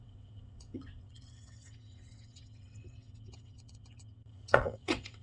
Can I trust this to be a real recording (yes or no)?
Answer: no